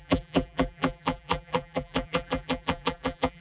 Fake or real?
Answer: fake